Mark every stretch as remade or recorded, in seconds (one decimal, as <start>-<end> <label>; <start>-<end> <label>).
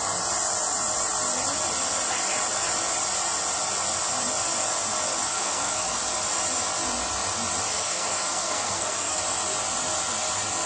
0.0-5.3 recorded; 5.3-6.0 remade; 6.0-7.7 recorded; 7.7-9.2 remade; 9.2-10.7 recorded